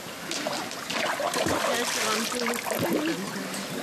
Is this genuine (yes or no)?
yes